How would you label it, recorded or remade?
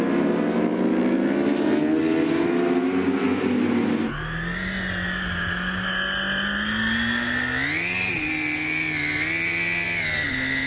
recorded